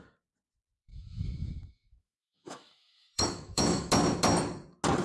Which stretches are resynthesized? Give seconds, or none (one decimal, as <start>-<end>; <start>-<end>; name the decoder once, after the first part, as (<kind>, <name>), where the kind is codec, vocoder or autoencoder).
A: 0.9-3.9 (autoencoder, DAC-VAE)